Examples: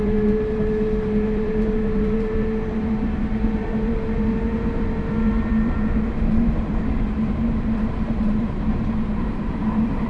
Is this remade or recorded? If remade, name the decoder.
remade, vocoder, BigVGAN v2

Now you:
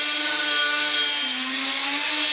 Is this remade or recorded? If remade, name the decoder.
recorded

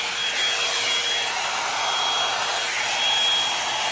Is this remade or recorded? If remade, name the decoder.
recorded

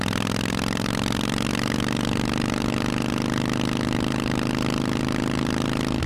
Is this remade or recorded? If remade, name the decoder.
recorded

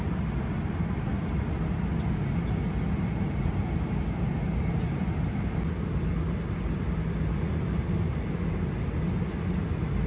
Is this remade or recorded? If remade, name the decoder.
recorded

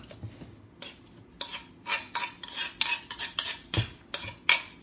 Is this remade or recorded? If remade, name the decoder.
recorded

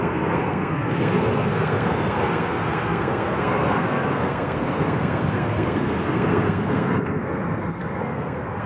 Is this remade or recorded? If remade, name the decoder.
remade, codec, SNAC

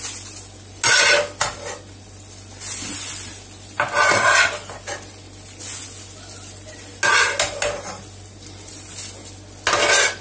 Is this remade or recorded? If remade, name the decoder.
recorded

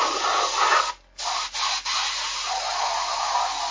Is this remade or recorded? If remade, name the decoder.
recorded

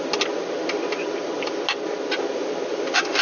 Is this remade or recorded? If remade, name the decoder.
recorded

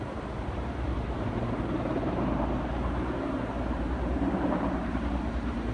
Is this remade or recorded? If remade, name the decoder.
remade, vocoder, BigVGAN v2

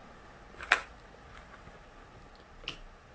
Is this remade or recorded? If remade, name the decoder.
recorded